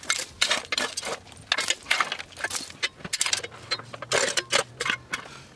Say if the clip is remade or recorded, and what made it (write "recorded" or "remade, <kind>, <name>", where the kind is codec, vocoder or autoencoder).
recorded